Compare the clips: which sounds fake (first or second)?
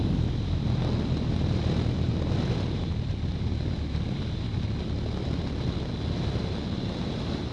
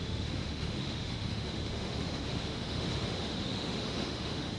second